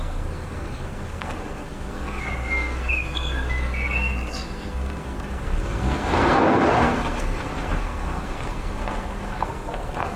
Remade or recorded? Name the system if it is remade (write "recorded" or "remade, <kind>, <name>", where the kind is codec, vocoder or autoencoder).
remade, codec, SNAC